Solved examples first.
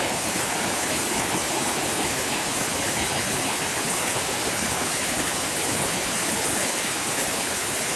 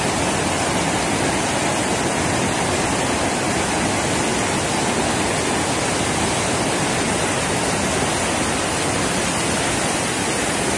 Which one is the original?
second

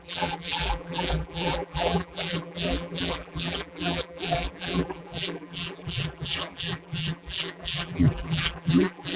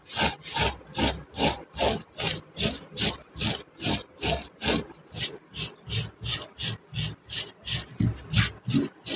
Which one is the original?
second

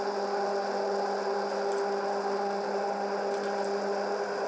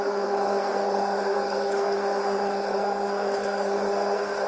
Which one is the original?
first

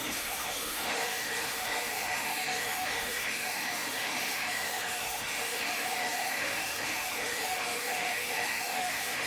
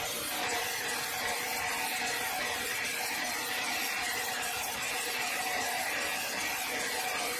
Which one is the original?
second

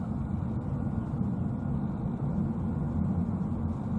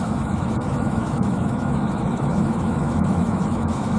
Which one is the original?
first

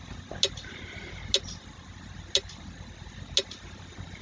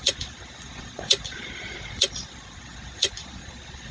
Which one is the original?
first